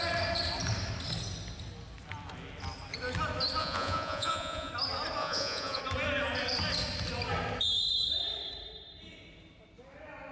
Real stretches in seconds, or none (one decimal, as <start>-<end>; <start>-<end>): 0.0-3.6; 4.7-5.2; 5.8-10.3